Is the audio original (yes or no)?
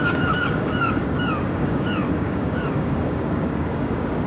no